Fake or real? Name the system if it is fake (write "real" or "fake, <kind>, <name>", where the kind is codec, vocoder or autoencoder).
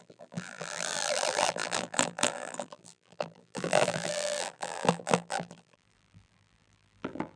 fake, vocoder, BigVGAN v2